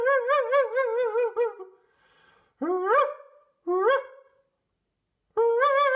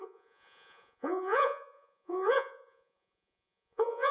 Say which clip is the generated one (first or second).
second